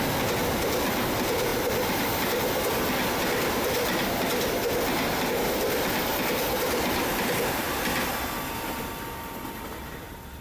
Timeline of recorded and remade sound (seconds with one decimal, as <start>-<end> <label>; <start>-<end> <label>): 0.0-10.4 recorded